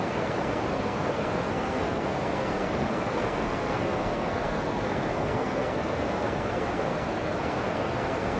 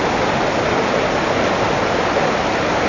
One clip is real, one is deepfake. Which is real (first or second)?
second